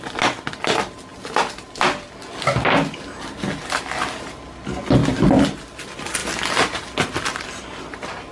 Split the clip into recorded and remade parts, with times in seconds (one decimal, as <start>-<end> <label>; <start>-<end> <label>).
0.0-8.3 recorded